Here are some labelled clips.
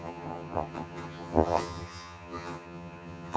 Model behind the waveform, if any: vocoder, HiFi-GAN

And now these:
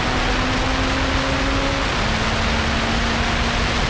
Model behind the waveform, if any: none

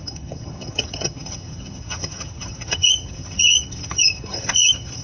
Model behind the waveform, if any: vocoder, HiFi-GAN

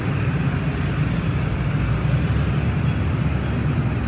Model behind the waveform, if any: none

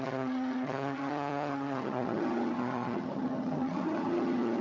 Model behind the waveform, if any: vocoder, HiFi-GAN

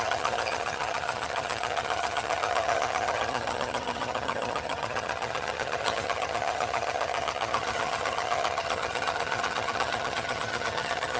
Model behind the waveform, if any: vocoder, HiFi-GAN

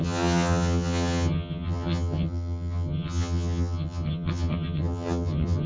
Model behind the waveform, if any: vocoder, HiFi-GAN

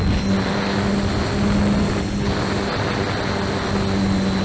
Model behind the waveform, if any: none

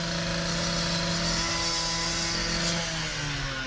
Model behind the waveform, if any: none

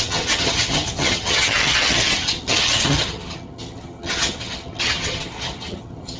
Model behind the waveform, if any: vocoder, HiFi-GAN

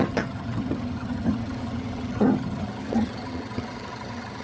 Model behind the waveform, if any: vocoder, HiFi-GAN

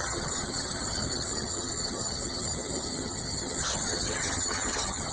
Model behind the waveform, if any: vocoder, HiFi-GAN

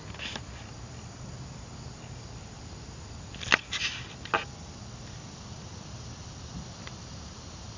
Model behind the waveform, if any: none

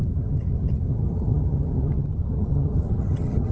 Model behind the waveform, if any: vocoder, HiFi-GAN